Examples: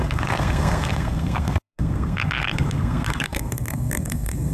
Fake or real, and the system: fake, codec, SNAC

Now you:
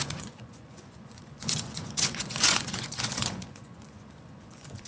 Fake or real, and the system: fake, vocoder, Vocos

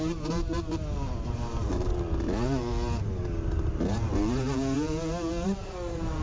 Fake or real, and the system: fake, vocoder, BigVGAN v2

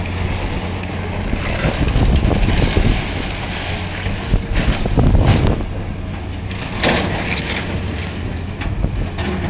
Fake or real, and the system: real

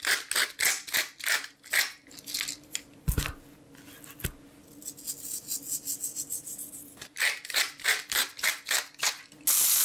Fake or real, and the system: real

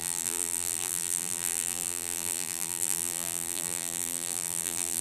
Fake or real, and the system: fake, vocoder, BigVGAN v2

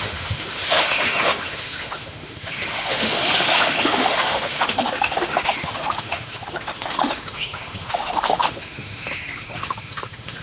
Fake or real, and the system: fake, autoencoder, DAC-VAE